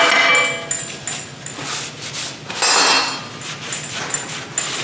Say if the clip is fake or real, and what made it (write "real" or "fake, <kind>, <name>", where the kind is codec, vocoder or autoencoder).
real